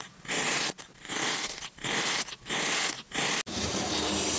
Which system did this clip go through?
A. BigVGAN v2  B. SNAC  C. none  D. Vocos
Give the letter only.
C